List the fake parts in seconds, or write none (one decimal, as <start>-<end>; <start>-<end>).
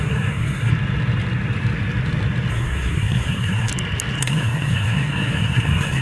0.0-0.7; 2.5-3.7; 4.2-6.0